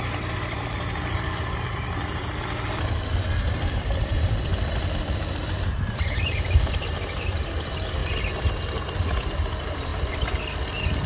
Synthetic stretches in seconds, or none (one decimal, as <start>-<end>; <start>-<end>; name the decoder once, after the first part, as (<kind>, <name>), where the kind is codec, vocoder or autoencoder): 0.0-8.0 (vocoder, BigVGAN v2); 8.8-11.1